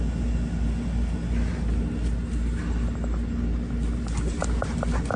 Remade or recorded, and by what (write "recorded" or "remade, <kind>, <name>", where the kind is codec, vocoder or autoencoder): recorded